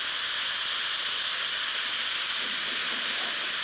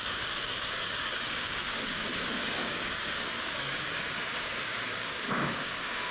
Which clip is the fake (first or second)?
second